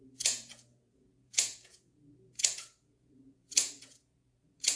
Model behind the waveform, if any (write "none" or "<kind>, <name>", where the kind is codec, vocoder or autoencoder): vocoder, Vocos